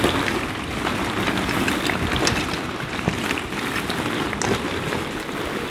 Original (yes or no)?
yes